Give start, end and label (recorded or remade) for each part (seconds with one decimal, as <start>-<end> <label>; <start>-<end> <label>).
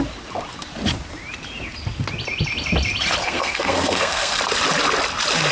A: 0.0-3.2 recorded; 3.2-4.4 remade; 4.4-5.5 recorded